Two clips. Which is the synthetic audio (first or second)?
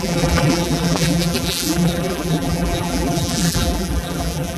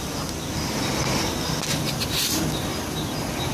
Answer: first